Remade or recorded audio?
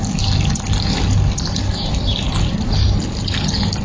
recorded